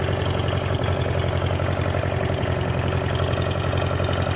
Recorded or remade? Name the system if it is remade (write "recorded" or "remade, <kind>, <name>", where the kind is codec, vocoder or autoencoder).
recorded